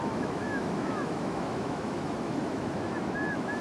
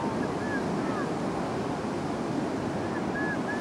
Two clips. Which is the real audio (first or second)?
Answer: second